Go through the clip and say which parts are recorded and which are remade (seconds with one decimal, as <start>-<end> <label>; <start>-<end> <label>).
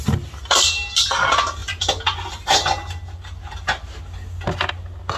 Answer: 0.0-5.2 recorded